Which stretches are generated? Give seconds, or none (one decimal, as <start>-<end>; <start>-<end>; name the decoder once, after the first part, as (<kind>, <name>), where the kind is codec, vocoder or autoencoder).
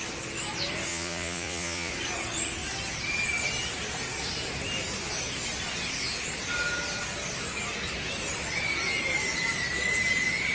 0.9-1.9 (vocoder, Vocos)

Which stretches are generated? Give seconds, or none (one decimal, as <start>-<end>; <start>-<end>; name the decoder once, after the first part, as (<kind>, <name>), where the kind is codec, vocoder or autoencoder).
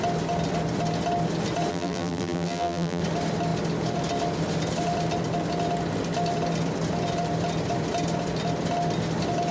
1.7-3.0 (vocoder, BigVGAN v2)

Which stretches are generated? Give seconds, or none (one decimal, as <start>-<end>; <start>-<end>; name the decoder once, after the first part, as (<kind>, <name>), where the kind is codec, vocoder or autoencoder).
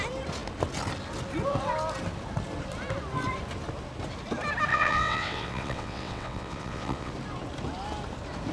4.7-7.1 (vocoder, WaveNeXt)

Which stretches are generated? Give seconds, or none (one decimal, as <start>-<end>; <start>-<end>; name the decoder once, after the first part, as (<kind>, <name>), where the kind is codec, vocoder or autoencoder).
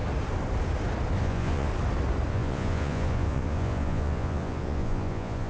1.2-1.7 (vocoder, Vocos); 2.3-5.5